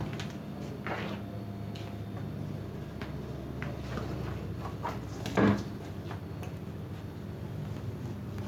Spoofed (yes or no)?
no